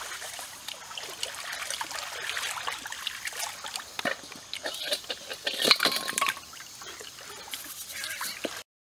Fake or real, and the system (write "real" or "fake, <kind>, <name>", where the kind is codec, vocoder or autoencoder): real